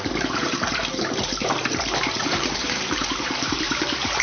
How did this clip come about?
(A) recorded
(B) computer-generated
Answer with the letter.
B